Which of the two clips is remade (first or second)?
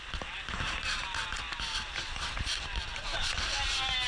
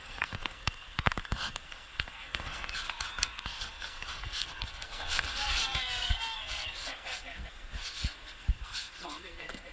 second